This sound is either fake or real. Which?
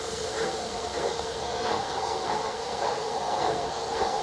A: fake